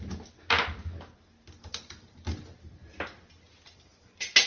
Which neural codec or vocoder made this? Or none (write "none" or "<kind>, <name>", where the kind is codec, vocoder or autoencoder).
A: none